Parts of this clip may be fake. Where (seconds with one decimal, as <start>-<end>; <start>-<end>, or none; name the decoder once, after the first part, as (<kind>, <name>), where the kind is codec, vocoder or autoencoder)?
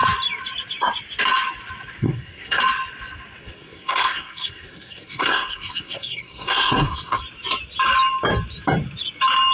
2.0-2.6 (codec, SNAC); 3.4-7.2